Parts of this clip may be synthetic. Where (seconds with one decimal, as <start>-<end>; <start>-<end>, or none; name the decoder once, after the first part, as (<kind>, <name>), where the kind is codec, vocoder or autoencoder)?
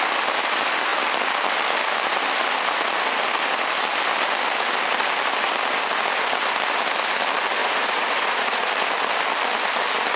7.6-8.7 (vocoder, Vocos)